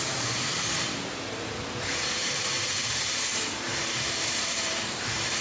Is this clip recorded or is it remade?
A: remade